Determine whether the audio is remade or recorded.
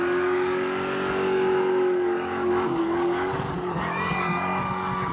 remade